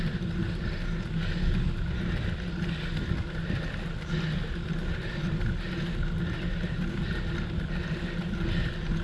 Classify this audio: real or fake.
real